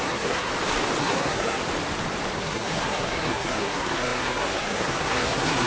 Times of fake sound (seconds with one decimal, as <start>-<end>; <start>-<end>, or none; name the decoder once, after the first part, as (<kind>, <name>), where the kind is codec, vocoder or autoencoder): 0.0-0.5 (codec, SNAC); 1.0-1.6; 2.4-5.7